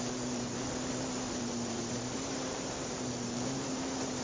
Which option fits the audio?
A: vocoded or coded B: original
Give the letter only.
A